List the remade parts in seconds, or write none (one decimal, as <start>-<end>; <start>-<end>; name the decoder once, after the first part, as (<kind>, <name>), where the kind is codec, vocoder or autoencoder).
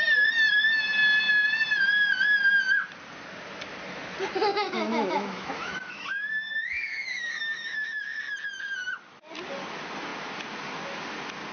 4.5-8.2 (autoencoder, DAC-VAE)